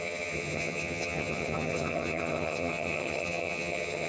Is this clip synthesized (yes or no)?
yes